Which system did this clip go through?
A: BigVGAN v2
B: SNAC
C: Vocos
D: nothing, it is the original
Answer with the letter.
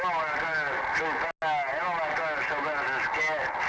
D